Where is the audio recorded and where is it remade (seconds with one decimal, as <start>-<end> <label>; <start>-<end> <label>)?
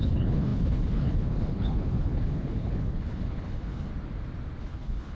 0.0-3.9 remade; 3.9-4.6 recorded; 4.6-5.1 remade